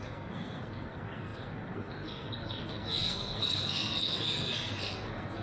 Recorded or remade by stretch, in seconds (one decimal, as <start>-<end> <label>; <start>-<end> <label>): 0.0-5.4 remade